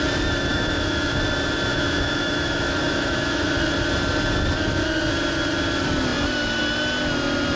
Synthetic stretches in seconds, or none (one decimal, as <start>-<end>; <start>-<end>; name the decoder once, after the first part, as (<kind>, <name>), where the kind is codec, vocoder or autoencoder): 0.5-1.2 (autoencoder, DAC-VAE); 1.7-3.5

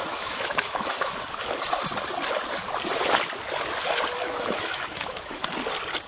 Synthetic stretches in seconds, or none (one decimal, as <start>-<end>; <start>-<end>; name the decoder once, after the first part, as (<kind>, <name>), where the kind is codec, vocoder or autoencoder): 0.0-1.1 (autoencoder, DAC-VAE); 4.2-5.4